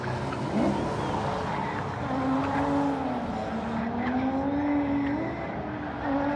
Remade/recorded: recorded